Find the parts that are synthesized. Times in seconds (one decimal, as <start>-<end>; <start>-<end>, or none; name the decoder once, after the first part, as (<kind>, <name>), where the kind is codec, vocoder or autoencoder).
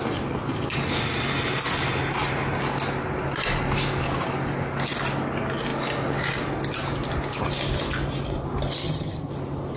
8.8-9.3 (vocoder, HiFi-GAN)